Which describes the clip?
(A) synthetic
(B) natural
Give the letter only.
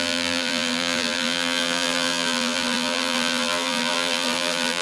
A